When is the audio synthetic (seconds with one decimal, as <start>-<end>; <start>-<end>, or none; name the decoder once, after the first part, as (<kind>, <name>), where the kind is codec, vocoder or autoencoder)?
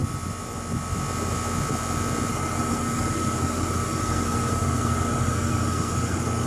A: 2.3-6.5 (codec, SNAC)